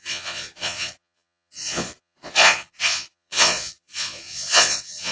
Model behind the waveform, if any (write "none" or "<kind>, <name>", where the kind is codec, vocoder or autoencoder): vocoder, Vocos